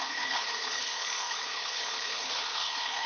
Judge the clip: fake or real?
fake